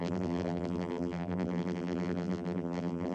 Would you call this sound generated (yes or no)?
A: yes